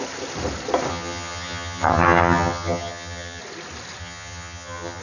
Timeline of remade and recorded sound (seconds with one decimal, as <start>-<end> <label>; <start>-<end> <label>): 0.0-0.9 recorded; 0.9-3.4 remade; 3.4-4.0 recorded; 4.0-5.0 remade